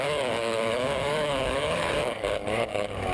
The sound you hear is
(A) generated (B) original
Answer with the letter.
A